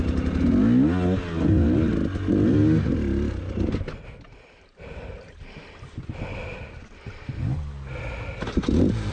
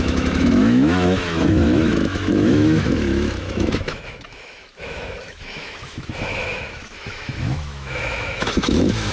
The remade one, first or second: second